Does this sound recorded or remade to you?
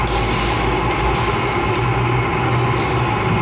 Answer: recorded